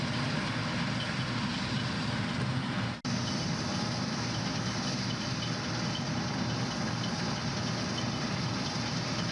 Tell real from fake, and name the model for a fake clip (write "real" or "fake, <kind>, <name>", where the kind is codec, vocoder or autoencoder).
real